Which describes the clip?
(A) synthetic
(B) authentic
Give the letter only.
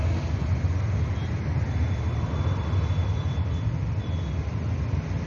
B